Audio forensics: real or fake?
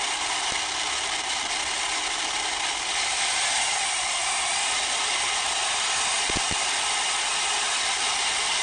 real